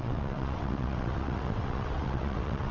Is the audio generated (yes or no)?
yes